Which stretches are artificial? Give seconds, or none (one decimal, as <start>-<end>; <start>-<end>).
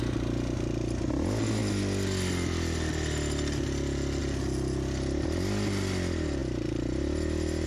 6.4-7.7